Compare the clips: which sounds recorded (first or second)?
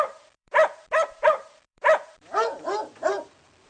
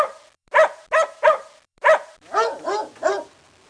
second